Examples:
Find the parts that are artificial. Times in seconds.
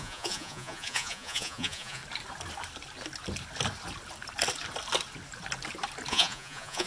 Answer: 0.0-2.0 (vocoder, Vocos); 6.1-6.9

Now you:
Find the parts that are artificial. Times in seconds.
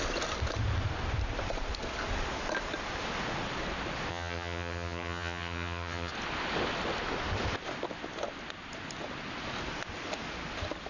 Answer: 4.1-6.1 (vocoder, HiFi-GAN)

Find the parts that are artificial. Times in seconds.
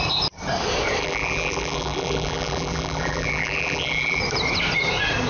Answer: 1.0-4.2 (vocoder, BigVGAN v2)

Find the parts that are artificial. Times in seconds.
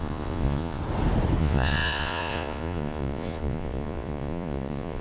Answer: 0.0-0.8 (vocoder, Vocos); 1.4-5.0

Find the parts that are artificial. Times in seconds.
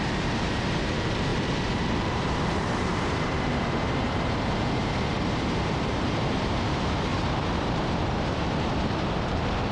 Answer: 0.0-9.7 (vocoder, BigVGAN v2)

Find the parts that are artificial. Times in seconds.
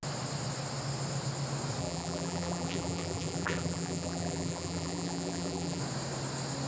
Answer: 1.8-5.8 (vocoder, BigVGAN v2)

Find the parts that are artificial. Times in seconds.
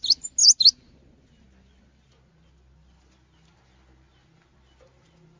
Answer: none